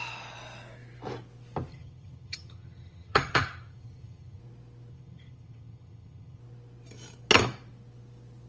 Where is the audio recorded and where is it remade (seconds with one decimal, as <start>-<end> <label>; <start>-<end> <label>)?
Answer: 0.0-1.7 recorded; 1.7-4.4 remade; 4.4-4.9 recorded; 4.9-6.4 remade; 6.4-8.5 recorded